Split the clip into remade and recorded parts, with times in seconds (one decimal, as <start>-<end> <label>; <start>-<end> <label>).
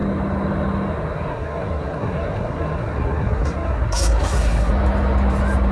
0.0-1.3 recorded; 1.3-4.7 remade; 4.7-5.7 recorded